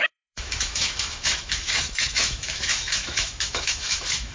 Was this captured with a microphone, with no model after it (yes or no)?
no